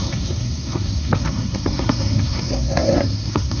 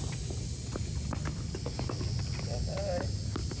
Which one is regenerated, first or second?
first